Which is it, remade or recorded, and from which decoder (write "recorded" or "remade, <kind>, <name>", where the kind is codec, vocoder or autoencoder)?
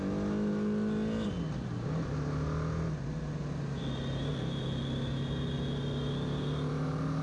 recorded